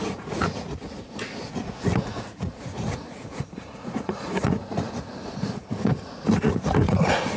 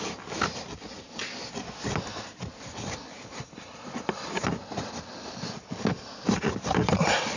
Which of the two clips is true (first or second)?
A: second